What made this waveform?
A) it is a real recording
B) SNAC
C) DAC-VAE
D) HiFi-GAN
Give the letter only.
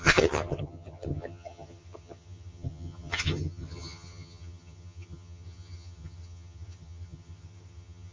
D